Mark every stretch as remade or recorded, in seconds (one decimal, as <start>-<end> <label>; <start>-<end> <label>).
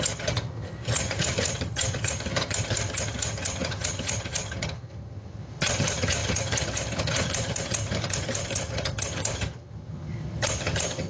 0.0-11.1 remade